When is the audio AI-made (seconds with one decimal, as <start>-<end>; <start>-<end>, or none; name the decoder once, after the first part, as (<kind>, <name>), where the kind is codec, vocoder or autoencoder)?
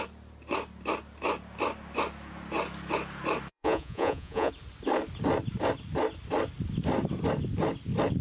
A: 3.5-4.5 (vocoder, Vocos)